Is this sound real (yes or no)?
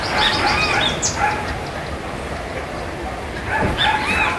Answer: yes